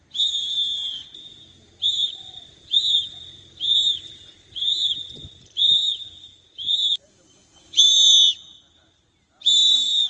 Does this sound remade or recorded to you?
remade